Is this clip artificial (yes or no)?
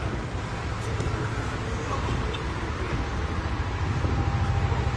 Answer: no